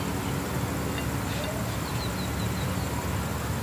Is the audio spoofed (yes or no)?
no